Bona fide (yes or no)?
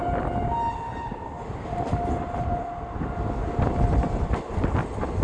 yes